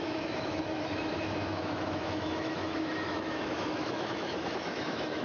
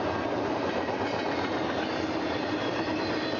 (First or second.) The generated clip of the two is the first